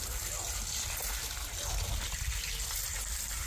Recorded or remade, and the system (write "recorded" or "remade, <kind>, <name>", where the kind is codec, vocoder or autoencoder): recorded